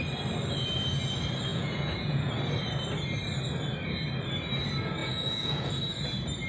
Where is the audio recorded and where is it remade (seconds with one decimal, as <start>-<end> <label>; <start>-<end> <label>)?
0.0-1.5 recorded; 1.5-2.3 remade; 2.3-5.0 recorded; 5.0-5.7 remade; 5.7-6.5 recorded